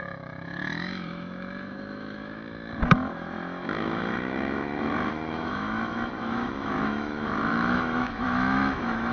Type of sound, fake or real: fake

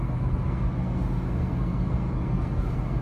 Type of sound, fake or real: fake